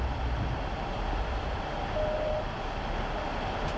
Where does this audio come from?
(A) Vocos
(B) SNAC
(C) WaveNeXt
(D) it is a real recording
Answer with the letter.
D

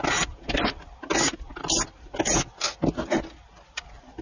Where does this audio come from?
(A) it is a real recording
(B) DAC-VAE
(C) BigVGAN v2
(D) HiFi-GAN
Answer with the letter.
A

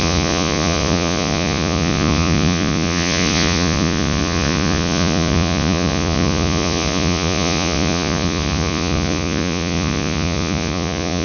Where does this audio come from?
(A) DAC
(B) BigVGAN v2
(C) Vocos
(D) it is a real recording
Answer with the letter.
C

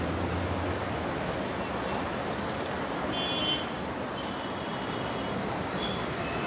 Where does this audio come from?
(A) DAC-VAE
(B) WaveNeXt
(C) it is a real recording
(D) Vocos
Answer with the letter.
C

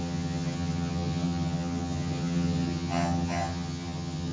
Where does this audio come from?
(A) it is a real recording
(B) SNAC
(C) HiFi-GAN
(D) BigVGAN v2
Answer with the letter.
C